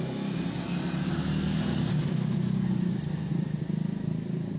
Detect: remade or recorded recorded